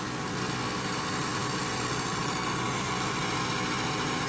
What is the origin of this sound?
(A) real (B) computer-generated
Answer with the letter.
A